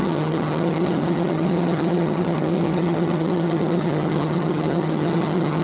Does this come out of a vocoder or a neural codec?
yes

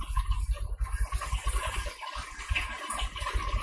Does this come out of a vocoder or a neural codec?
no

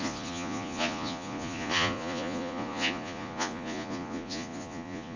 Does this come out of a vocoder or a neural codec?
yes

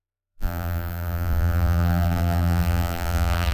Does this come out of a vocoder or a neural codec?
yes